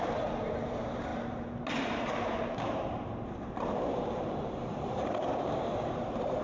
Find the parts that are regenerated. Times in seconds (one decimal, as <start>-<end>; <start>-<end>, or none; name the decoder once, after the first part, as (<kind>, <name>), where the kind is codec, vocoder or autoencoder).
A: 0.0-6.4 (vocoder, BigVGAN v2)